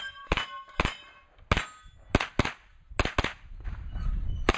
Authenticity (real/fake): real